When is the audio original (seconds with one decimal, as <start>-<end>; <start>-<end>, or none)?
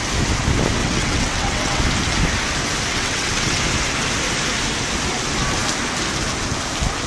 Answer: 0.0-0.8; 1.8-2.9; 3.6-7.1